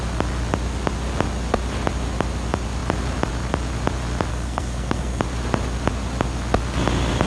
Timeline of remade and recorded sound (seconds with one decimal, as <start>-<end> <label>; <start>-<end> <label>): 0.0-4.3 recorded; 4.3-5.2 remade; 5.2-7.3 recorded